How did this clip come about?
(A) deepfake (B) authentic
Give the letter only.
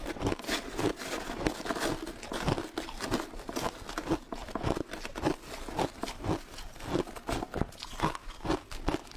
B